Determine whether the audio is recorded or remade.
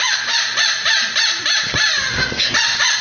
recorded